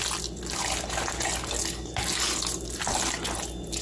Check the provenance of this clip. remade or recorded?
recorded